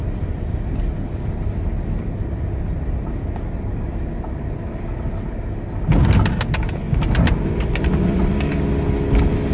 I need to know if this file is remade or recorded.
recorded